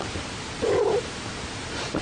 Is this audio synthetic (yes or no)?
no